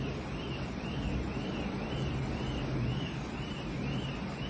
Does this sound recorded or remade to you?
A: recorded